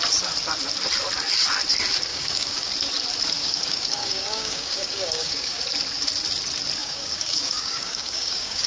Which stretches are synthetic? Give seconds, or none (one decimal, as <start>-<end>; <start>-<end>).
2.1-2.7; 3.4-5.6; 6.8-8.7